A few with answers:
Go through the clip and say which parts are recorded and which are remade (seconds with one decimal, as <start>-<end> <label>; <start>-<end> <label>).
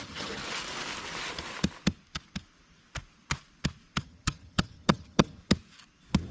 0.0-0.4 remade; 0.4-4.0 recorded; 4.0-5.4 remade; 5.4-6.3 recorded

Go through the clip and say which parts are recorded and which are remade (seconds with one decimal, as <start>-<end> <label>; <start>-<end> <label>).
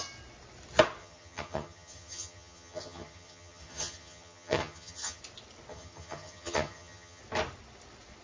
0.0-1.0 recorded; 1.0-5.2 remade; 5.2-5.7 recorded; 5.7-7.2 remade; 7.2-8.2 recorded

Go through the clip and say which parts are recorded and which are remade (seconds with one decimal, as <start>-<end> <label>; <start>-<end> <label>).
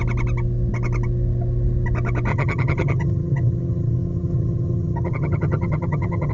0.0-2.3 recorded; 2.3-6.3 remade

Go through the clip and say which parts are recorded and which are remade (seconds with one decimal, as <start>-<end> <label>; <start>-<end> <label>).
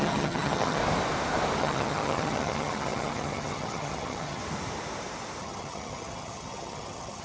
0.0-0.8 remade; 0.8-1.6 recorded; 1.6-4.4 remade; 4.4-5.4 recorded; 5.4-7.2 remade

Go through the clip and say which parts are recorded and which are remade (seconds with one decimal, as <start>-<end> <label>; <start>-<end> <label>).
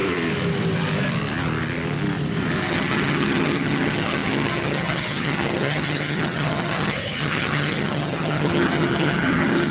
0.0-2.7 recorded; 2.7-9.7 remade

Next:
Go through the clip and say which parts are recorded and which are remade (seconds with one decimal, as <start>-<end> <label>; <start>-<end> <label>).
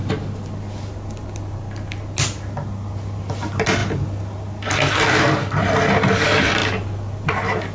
0.0-7.7 recorded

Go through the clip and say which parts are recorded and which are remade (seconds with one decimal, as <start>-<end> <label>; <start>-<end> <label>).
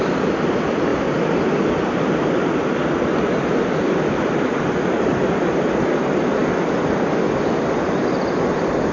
0.0-8.9 recorded